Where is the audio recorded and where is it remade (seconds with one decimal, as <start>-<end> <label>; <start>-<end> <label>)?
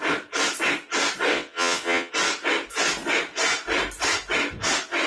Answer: 0.0-1.3 recorded; 1.3-2.1 remade; 2.1-5.1 recorded